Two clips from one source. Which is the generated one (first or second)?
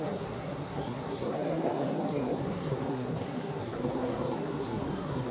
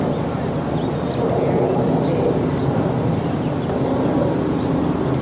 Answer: first